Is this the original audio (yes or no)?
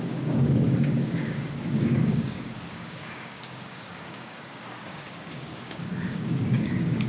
no